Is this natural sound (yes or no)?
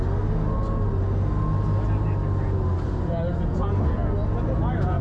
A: yes